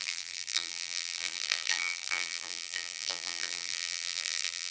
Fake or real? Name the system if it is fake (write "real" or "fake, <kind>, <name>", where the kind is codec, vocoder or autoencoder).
fake, vocoder, BigVGAN v2